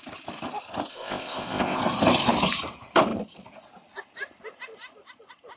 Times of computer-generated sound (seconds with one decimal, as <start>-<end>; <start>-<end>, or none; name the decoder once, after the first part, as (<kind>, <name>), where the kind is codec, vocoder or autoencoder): 0.9-1.8 (codec, ZipCodec)